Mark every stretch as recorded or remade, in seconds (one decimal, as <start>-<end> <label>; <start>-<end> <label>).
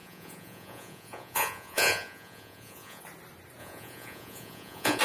0.0-3.0 remade; 3.0-3.6 recorded; 3.6-5.0 remade